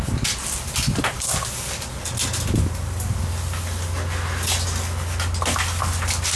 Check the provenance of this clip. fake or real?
real